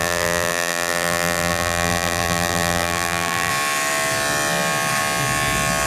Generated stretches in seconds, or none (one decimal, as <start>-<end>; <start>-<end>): 0.0-3.5